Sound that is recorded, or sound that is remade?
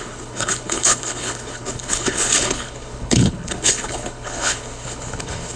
remade